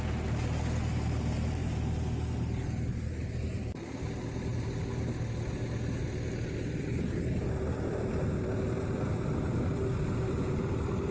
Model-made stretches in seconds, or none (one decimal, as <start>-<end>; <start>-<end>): none